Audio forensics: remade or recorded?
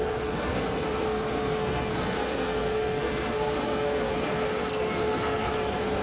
remade